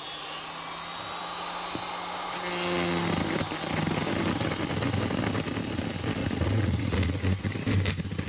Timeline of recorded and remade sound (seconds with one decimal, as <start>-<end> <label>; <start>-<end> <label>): 0.0-6.2 recorded; 6.2-7.5 remade; 7.5-8.3 recorded